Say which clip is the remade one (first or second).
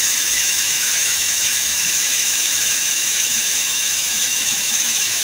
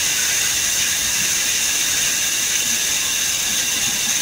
first